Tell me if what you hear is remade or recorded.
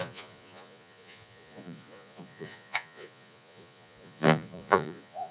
remade